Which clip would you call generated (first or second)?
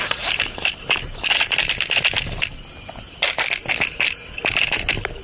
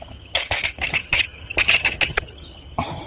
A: second